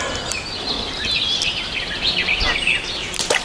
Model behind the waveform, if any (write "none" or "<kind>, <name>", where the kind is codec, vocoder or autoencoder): none